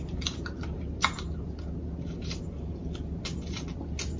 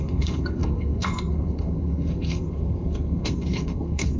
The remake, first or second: second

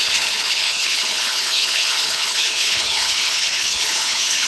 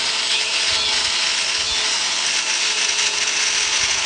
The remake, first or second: first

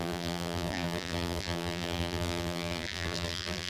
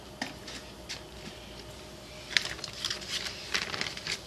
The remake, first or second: first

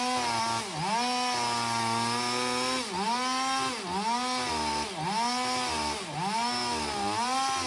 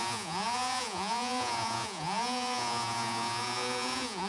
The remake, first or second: second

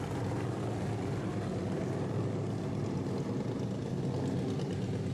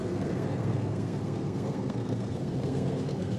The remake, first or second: second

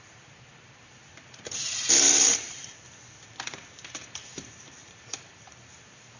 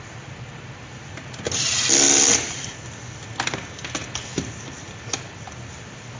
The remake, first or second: first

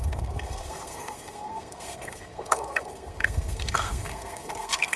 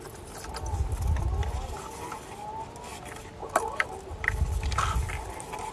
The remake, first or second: first